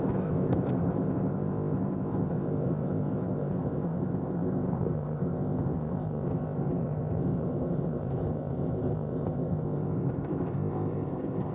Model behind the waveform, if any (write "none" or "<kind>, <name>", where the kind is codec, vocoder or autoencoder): codec, ZipCodec